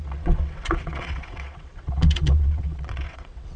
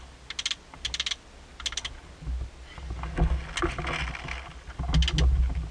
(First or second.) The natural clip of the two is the second